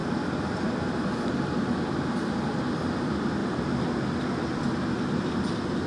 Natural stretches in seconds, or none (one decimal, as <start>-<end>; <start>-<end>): 0.0-5.9